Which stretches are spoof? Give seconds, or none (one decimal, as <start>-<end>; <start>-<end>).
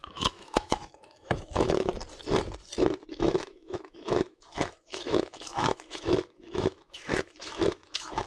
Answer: 0.0-1.9; 3.1-8.3